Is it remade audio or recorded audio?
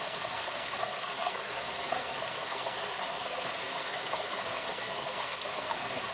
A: remade